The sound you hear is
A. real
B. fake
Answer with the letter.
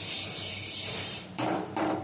B